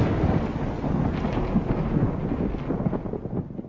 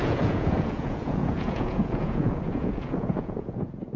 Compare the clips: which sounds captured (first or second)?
first